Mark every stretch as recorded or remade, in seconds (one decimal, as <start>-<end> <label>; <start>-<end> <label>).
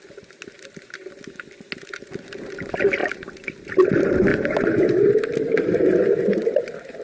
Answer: 0.0-4.3 recorded; 4.3-4.9 remade; 4.9-7.0 recorded